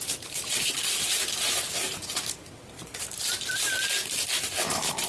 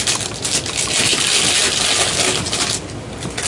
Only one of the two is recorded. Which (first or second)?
second